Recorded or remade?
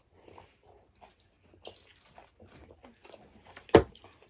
recorded